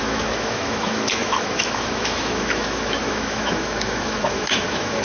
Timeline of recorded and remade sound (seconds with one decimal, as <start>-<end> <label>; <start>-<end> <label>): 0.0-5.0 remade